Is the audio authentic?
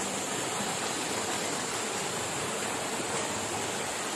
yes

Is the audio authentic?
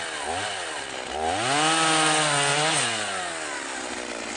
yes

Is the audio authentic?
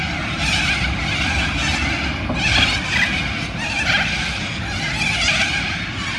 yes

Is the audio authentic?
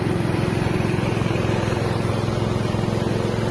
yes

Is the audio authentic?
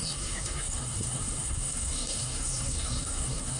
no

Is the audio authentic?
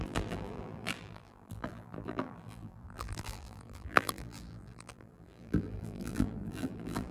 no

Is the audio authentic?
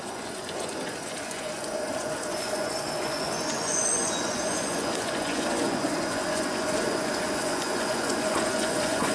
no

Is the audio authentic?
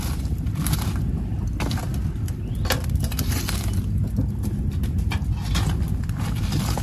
yes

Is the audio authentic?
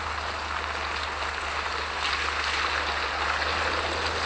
yes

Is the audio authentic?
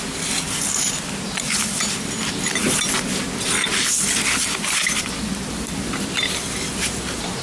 yes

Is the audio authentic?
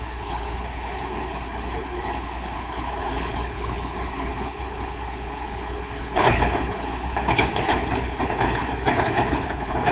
no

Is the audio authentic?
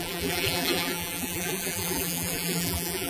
no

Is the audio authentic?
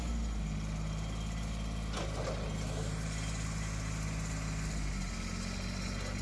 yes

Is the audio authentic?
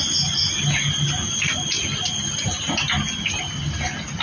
yes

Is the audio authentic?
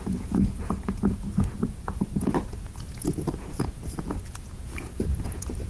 no